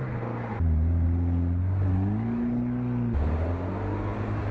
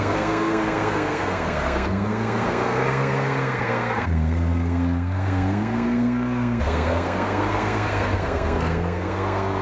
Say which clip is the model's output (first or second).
second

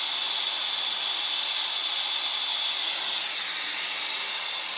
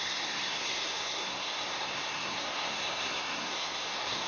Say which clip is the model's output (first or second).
second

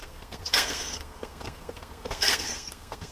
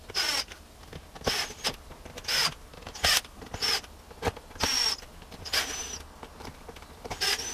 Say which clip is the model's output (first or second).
first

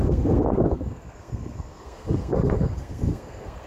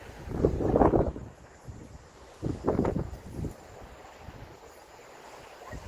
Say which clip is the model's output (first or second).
first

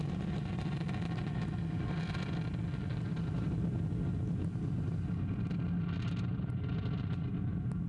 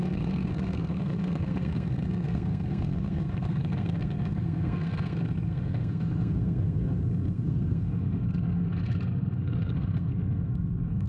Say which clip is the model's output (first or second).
second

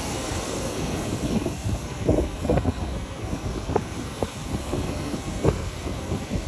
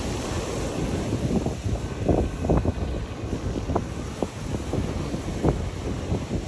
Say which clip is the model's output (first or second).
first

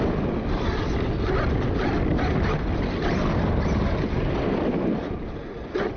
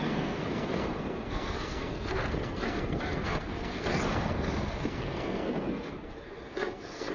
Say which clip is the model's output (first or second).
second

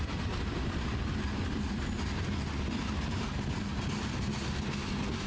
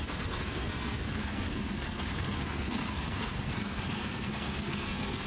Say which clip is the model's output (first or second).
second